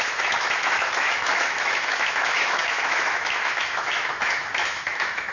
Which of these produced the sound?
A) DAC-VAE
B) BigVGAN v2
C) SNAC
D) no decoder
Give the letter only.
A